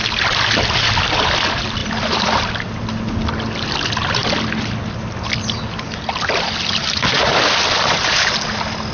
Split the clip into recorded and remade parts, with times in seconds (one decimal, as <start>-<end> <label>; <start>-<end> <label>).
0.0-1.8 recorded; 1.8-2.4 remade; 2.4-8.9 recorded